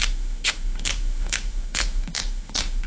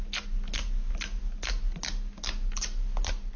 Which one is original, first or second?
second